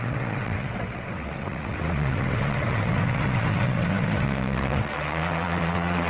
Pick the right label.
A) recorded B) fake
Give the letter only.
B